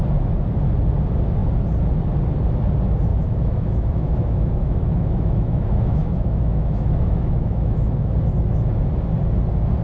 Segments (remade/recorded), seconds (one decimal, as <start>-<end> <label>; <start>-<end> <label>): 0.0-3.1 recorded; 3.1-8.1 remade; 8.1-9.8 recorded